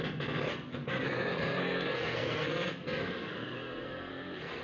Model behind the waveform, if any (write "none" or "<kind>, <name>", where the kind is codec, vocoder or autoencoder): codec, SNAC